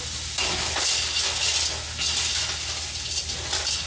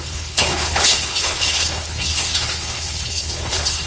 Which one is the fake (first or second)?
second